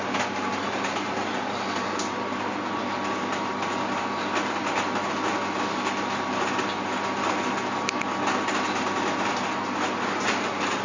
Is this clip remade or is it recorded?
recorded